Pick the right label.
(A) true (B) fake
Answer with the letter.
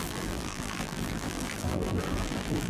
B